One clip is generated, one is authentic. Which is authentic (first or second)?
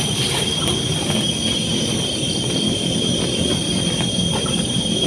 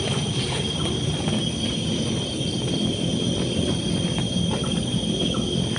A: second